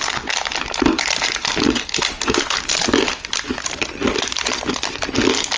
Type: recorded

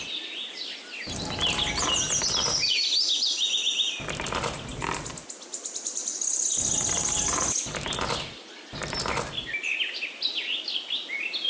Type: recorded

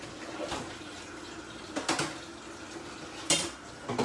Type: recorded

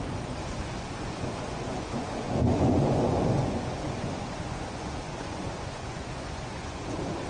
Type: remade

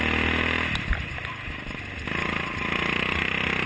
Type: recorded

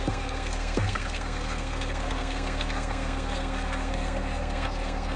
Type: remade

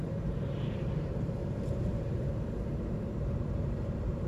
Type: remade